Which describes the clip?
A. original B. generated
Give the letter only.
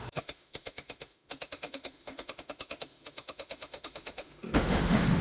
B